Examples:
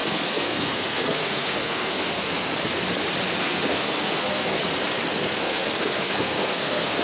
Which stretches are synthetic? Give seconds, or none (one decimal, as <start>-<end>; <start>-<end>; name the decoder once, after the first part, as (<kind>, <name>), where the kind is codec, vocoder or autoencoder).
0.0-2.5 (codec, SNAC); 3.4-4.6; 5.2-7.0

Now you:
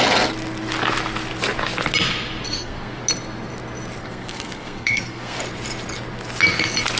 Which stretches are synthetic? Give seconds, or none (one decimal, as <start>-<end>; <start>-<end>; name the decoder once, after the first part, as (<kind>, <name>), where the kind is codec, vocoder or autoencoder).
2.5-3.0 (codec, SNAC); 4.0-5.4

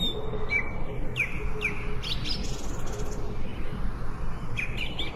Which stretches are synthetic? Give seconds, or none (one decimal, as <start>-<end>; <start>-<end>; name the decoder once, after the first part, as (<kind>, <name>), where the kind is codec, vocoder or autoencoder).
none